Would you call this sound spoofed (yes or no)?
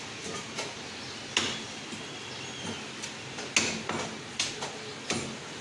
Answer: no